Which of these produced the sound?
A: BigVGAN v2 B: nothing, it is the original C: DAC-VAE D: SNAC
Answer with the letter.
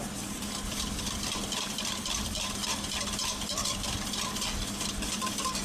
B